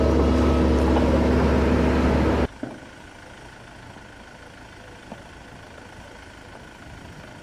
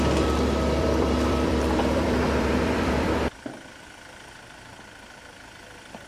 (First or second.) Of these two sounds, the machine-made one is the second